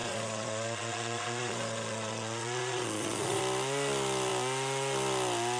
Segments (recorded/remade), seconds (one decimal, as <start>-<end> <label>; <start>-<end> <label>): 0.0-3.4 remade; 3.4-5.6 recorded

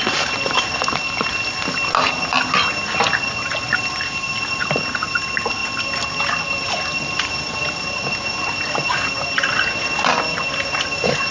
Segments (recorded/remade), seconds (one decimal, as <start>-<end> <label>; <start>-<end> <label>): 0.0-11.3 recorded

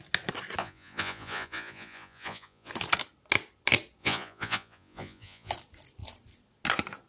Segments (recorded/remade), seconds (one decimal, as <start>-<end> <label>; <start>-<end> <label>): 0.0-0.6 recorded; 0.6-2.7 remade; 2.7-4.0 recorded; 4.0-5.5 remade; 5.5-7.1 recorded

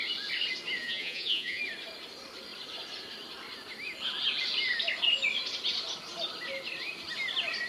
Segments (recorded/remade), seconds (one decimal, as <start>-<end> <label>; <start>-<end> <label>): 0.0-0.8 recorded; 0.8-1.6 remade; 1.6-7.7 recorded

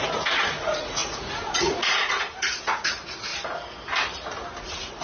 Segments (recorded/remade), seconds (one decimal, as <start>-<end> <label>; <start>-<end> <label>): 0.0-3.3 remade; 3.3-4.6 recorded; 4.6-5.0 remade

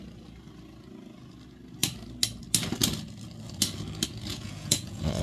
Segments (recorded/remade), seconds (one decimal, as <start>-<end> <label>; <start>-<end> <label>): 0.0-4.3 recorded; 4.3-5.2 remade

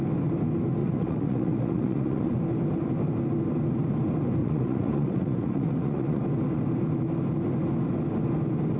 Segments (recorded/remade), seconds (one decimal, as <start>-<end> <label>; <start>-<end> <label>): 0.0-0.8 recorded; 0.8-2.3 remade; 2.3-4.4 recorded; 4.4-6.2 remade; 6.2-8.8 recorded